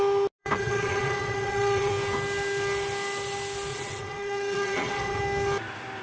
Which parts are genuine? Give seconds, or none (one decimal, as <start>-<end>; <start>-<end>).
0.0-0.4; 1.9-3.7; 5.2-6.0